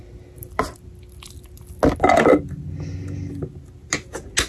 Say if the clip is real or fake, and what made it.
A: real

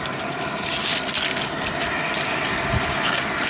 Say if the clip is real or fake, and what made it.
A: real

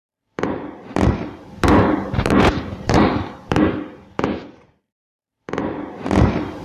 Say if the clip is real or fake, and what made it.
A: fake, vocoder, BigVGAN v2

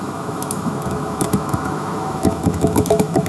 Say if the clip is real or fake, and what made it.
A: fake, autoencoder, DAC-VAE